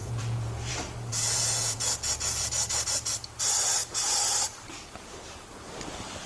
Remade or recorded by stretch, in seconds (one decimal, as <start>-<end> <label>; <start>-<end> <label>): 0.0-0.7 remade; 0.7-1.1 recorded; 1.1-2.5 remade; 2.5-6.3 recorded